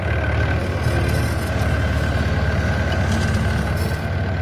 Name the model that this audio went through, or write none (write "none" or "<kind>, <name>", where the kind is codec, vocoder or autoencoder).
none